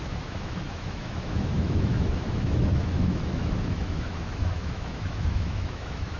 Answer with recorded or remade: remade